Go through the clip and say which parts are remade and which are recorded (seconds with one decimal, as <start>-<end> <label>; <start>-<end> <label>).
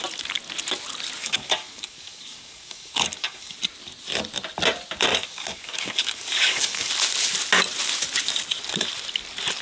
0.0-1.2 recorded; 1.2-3.6 remade; 3.6-5.1 recorded; 5.1-6.9 remade; 6.9-9.6 recorded